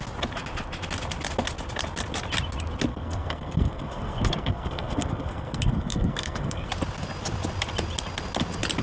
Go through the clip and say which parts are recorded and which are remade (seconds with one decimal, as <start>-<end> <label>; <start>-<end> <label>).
0.0-2.9 recorded; 2.9-6.7 remade; 6.7-8.8 recorded